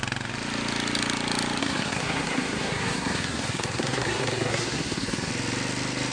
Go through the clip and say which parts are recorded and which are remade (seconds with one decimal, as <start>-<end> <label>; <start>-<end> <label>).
0.0-1.6 recorded; 1.6-5.3 remade; 5.3-6.1 recorded